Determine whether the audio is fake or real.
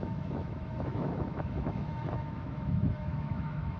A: fake